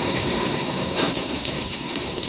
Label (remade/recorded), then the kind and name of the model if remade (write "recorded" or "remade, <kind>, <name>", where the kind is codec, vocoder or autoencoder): remade, codec, SNAC